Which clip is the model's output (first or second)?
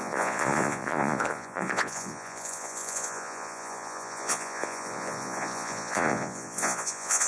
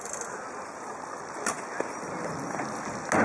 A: first